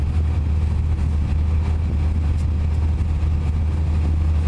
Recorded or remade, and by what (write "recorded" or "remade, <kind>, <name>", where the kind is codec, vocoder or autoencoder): recorded